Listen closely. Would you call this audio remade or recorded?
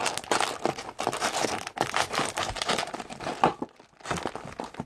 recorded